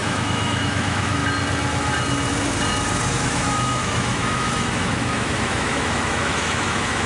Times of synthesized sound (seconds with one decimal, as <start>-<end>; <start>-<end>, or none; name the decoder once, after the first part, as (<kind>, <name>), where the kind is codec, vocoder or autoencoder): 0.0-1.2 (autoencoder, DAC-VAE); 3.1-7.1